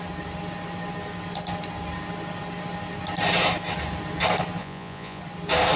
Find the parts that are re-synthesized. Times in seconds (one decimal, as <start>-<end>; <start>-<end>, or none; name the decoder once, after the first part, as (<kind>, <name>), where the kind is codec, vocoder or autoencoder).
4.6-5.2 (vocoder, Vocos)